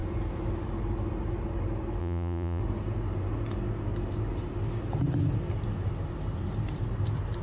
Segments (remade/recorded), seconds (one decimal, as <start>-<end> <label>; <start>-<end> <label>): 0.0-2.0 recorded; 2.0-2.6 remade; 2.6-7.4 recorded